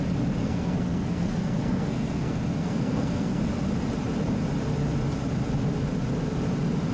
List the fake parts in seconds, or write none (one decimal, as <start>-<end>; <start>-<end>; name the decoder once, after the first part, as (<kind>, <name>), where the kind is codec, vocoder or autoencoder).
0.4-3.4 (codec, SNAC)